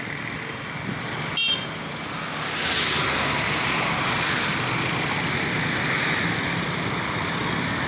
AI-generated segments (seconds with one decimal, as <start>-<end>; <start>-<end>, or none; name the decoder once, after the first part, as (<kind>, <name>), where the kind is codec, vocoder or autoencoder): none